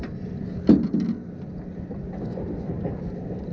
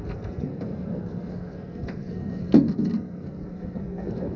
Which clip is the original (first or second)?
first